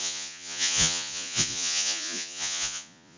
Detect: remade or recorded remade